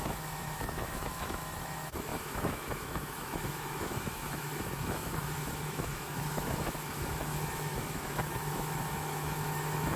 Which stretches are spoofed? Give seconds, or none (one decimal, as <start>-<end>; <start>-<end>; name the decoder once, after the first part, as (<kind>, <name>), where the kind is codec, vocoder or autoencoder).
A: 0.0-10.0 (autoencoder, DAC-VAE)